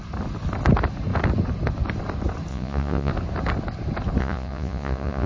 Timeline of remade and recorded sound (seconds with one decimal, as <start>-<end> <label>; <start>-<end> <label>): 0.0-2.5 recorded; 2.5-3.1 remade; 3.1-4.2 recorded; 4.2-5.3 remade